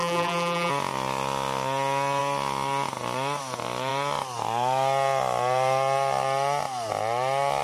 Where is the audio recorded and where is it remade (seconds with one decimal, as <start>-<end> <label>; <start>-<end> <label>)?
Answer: 0.0-0.7 remade; 0.7-7.6 recorded